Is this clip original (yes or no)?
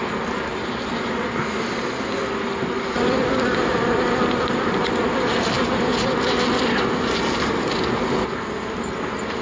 yes